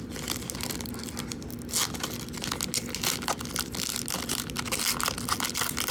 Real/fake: real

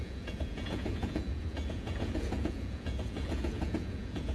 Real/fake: fake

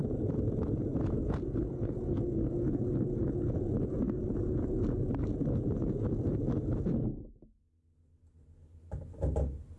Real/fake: real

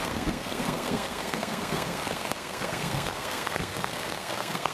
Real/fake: fake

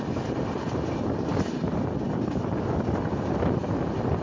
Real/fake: real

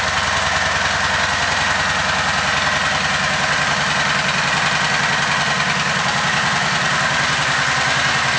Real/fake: real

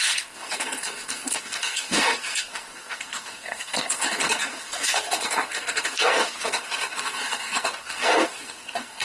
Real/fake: fake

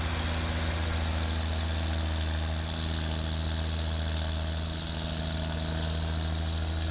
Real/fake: real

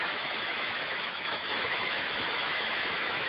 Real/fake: fake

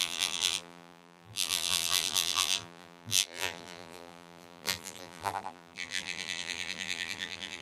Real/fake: fake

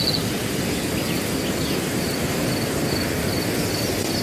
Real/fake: real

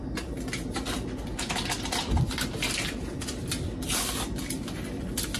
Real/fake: fake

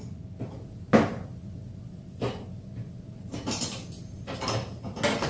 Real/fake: real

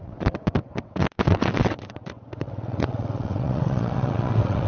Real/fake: fake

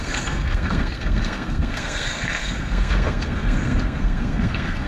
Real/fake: fake